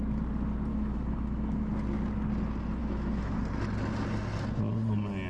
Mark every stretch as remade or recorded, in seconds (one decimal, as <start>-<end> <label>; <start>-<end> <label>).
0.0-0.7 recorded; 0.7-1.7 remade; 1.7-2.8 recorded; 2.8-3.4 remade; 3.4-5.3 recorded